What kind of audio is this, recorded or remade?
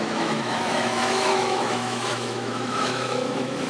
remade